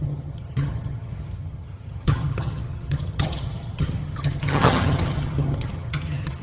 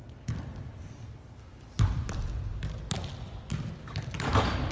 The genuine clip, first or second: second